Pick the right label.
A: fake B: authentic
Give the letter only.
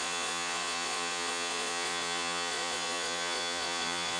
A